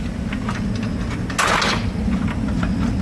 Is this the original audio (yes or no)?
yes